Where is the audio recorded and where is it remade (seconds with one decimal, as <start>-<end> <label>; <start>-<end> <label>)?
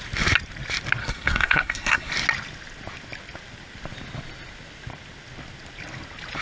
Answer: 0.0-1.0 recorded; 1.0-2.1 remade; 2.1-6.4 recorded